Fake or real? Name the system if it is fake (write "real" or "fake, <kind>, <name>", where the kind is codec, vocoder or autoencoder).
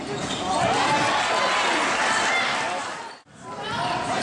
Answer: real